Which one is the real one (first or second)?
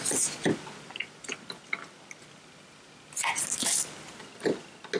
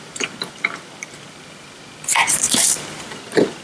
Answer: first